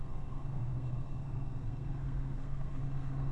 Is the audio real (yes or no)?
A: no